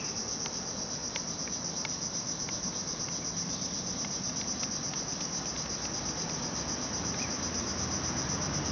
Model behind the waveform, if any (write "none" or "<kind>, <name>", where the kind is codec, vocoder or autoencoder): none